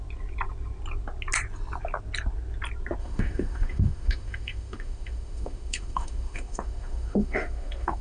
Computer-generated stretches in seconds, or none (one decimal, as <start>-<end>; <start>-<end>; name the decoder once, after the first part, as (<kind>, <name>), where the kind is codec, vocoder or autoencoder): 3.0-8.0 (autoencoder, DAC-VAE)